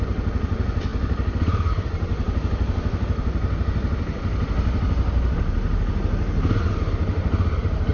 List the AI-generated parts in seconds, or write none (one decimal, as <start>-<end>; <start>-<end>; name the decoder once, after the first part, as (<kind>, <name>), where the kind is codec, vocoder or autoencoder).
none